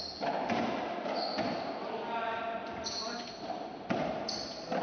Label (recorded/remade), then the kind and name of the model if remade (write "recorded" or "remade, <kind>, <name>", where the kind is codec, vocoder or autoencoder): recorded